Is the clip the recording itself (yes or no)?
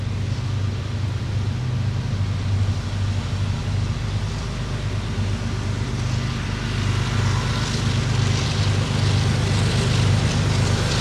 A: yes